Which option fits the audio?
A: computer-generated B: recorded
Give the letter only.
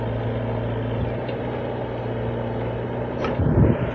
B